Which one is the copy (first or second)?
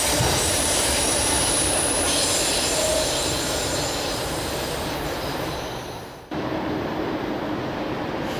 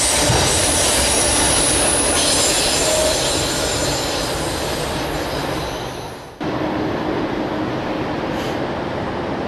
first